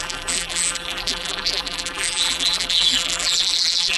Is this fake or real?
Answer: fake